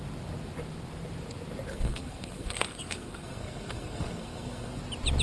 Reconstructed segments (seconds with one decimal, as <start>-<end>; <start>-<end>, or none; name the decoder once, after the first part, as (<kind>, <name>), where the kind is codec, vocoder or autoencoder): 1.7-4.8 (codec, SNAC)